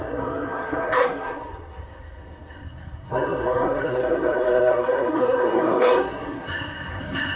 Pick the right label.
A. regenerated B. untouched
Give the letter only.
A